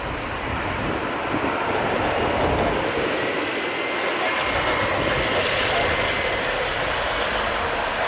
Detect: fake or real real